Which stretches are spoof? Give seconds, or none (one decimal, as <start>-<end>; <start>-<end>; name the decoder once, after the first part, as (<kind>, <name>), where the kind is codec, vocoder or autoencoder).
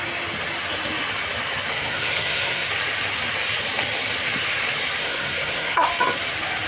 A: 1.7-2.7 (codec, SNAC); 5.0-5.9